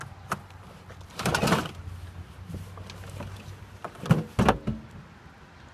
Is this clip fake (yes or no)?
no